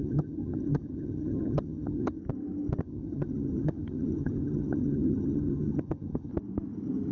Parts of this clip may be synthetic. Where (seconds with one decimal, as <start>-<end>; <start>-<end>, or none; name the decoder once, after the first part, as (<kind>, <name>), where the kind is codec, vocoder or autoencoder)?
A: 0.0-2.2 (vocoder, HiFi-GAN); 2.8-6.3